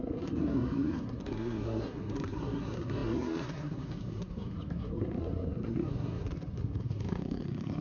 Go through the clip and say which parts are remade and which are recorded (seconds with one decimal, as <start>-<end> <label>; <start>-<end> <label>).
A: 0.0-7.8 remade